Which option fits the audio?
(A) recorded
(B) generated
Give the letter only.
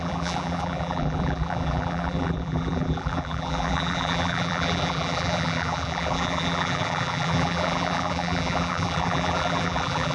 B